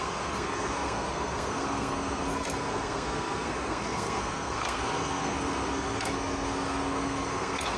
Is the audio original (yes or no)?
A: no